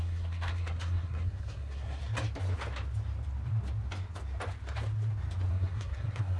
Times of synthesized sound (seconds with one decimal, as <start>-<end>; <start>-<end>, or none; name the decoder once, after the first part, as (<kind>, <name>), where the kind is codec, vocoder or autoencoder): 0.0-2.0 (codec, SNAC); 5.5-6.4